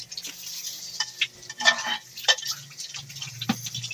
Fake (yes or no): yes